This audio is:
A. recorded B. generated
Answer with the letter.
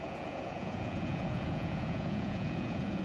B